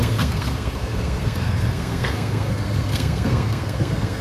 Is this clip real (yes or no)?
no